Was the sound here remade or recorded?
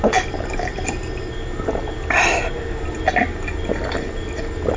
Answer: recorded